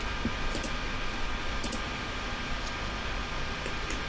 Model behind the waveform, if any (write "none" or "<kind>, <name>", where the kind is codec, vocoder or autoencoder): none